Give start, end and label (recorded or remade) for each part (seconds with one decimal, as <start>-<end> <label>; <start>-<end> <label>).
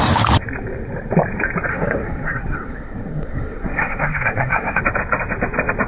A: 0.0-1.7 recorded; 1.7-4.8 remade; 4.8-5.9 recorded